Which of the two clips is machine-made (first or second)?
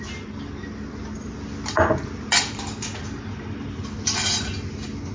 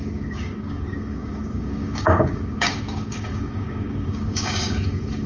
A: second